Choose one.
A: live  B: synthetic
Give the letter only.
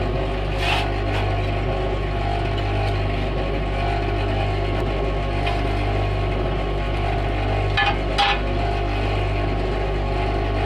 A